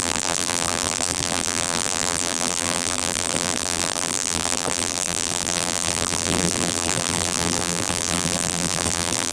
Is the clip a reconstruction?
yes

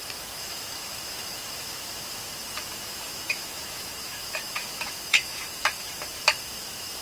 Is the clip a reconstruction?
yes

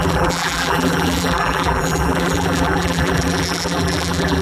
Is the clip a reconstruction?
yes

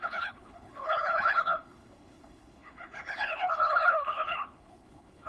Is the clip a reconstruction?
yes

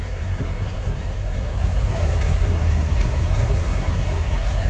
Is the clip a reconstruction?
yes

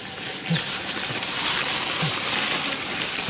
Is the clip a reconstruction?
no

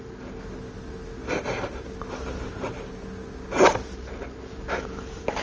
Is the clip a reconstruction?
no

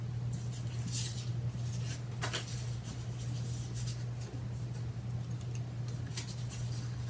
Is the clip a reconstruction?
no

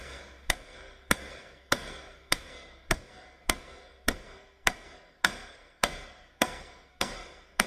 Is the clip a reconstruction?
yes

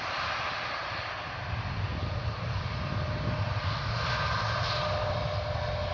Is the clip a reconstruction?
no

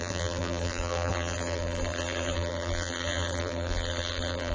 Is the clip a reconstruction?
yes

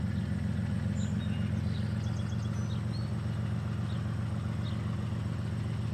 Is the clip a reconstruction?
no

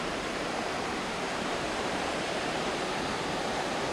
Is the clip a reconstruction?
yes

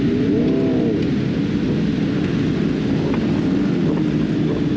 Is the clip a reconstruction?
no